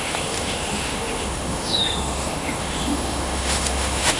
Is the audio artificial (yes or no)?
yes